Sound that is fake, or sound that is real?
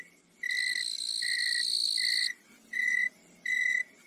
real